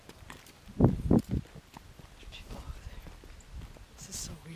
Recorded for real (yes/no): yes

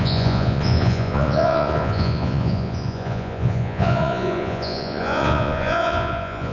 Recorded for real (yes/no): no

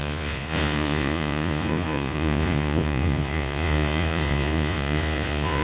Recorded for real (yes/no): no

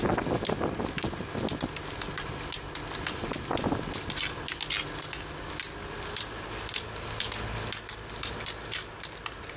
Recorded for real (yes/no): yes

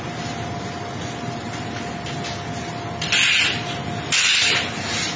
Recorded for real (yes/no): yes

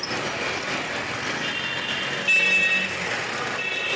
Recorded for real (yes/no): yes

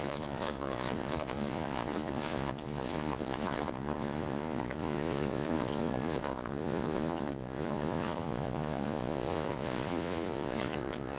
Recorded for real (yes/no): no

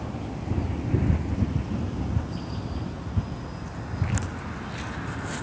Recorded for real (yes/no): yes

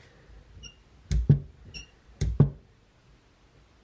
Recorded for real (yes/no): yes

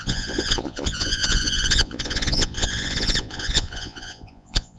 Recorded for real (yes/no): no